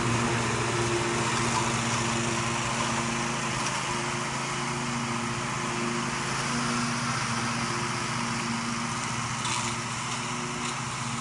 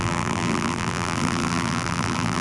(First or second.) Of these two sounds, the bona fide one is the first